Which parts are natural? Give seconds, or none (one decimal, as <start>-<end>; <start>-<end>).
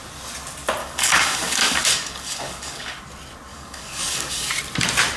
0.0-0.8; 3.0-3.5; 4.5-5.2